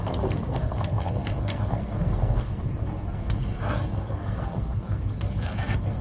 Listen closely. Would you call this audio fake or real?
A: fake